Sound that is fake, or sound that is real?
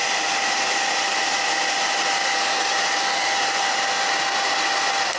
real